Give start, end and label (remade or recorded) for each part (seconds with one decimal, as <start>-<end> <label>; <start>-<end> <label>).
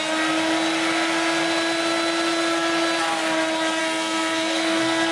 0.0-3.8 recorded; 3.8-5.1 remade